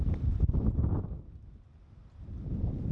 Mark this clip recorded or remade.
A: recorded